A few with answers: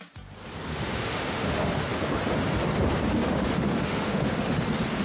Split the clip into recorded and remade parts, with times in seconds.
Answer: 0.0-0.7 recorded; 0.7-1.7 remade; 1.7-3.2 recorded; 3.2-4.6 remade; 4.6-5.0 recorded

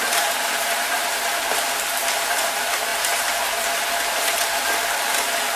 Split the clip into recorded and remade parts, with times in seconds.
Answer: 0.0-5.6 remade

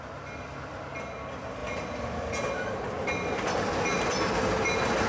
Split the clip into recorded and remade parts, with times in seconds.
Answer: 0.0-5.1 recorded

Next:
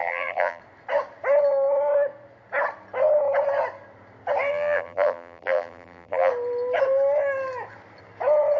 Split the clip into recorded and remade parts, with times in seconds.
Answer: 0.0-0.6 remade; 0.6-4.5 recorded; 4.5-6.3 remade; 6.3-8.6 recorded

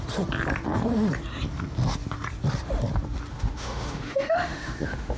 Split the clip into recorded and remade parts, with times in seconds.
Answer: 0.0-3.3 recorded; 3.3-5.2 remade

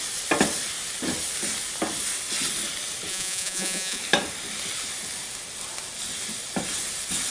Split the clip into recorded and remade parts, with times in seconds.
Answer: 0.0-3.1 recorded; 3.1-4.0 remade; 4.0-7.3 recorded